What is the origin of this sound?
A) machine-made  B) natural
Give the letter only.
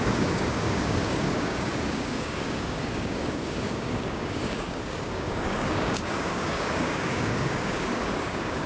A